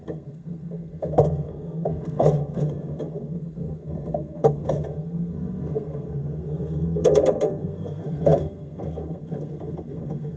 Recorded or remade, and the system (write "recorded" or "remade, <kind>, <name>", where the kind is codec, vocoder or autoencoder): remade, codec, SNAC